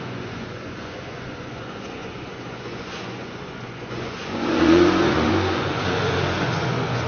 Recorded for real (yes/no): no